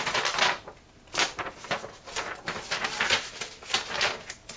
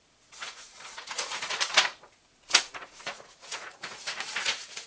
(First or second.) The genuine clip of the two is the first